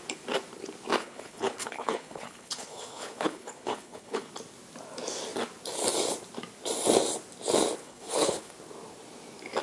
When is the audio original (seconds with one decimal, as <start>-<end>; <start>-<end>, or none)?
0.0-1.0; 4.3-7.8; 8.5-9.6